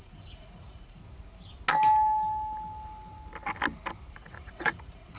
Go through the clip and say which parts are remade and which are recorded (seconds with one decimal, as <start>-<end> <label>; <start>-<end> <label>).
0.0-1.0 remade; 1.0-4.1 recorded; 4.1-5.2 remade